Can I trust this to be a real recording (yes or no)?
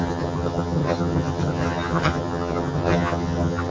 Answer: no